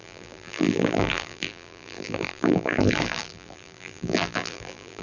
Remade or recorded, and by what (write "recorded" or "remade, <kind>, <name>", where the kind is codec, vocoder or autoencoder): remade, vocoder, BigVGAN v2